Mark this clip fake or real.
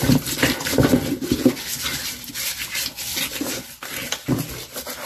real